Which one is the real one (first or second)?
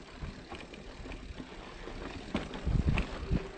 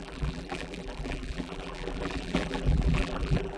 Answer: first